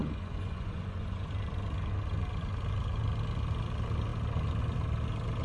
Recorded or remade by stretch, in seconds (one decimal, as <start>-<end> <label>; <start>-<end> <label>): 0.0-1.3 remade; 1.3-5.4 recorded